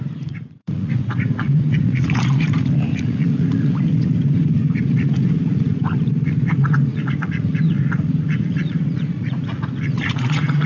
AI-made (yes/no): yes